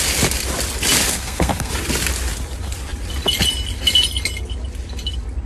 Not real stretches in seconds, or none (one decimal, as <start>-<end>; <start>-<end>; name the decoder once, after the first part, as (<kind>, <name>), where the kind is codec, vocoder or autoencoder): 1.1-1.7 (codec, SNAC)